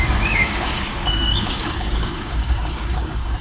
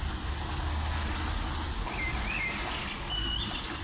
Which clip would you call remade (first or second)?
first